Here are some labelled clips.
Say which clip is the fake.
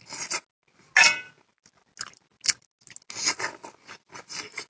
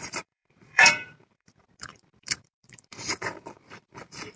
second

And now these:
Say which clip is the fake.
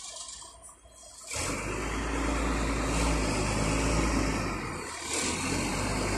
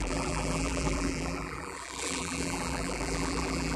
second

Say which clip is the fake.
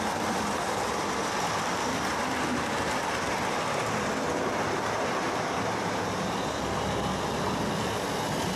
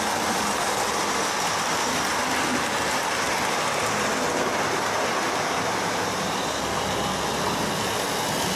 first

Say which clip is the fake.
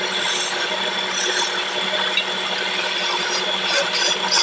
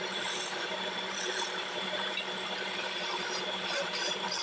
second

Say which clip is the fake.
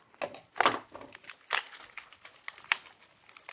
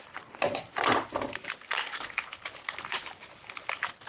second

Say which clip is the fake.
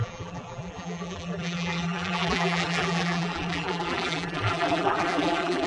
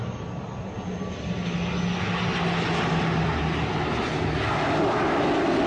first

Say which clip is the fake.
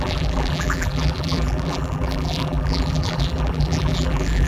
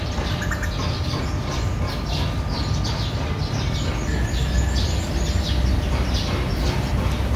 first